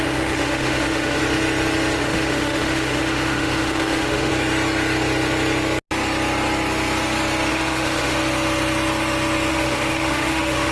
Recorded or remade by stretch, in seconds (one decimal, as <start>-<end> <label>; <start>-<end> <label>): 0.0-1.2 remade; 1.2-2.0 recorded; 2.0-4.3 remade; 4.3-7.5 recorded; 7.5-8.2 remade; 8.2-9.5 recorded; 9.5-10.7 remade